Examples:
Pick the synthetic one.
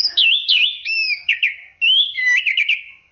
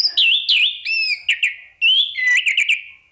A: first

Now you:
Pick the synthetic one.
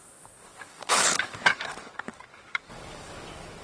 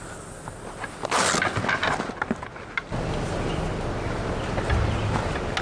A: first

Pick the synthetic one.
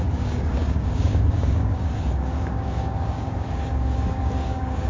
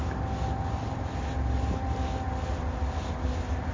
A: first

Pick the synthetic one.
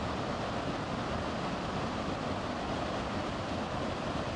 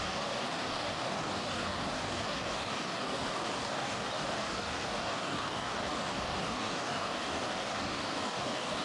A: second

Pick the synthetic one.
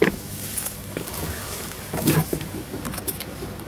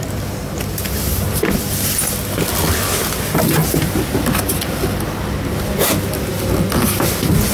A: first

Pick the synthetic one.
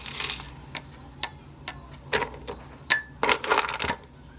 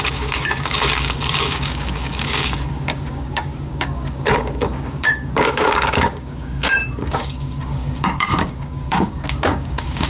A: second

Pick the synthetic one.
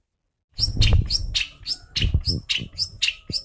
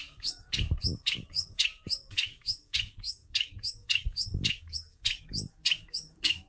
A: second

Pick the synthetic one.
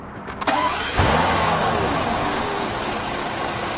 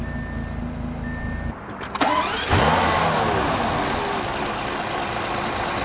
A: first